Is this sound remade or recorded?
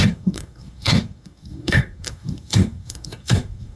remade